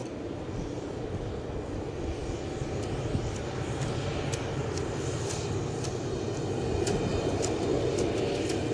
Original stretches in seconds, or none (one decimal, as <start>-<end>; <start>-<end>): 0.0-8.7